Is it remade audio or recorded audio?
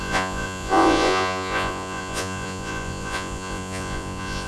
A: remade